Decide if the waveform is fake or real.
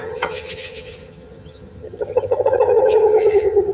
fake